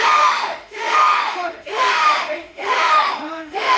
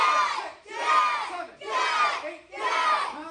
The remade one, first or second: first